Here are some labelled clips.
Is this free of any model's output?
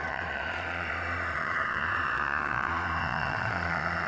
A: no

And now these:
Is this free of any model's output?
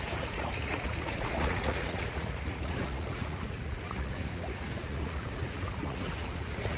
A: no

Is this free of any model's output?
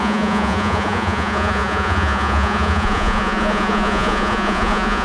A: no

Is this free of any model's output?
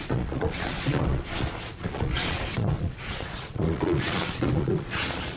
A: no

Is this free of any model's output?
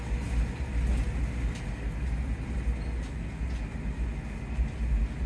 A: yes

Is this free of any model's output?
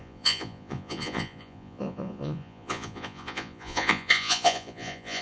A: no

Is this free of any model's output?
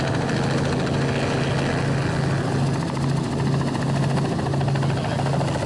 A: yes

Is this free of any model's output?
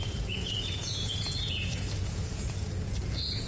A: no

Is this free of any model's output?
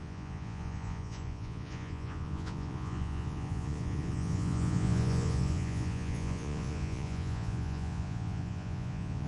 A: no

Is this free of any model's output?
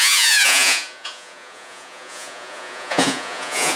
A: no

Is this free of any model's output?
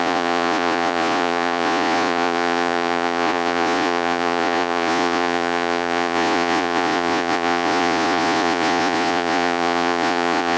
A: no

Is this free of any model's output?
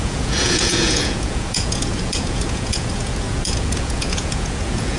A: no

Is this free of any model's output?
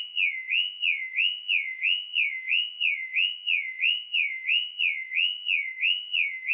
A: no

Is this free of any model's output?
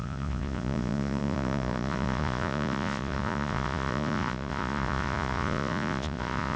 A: no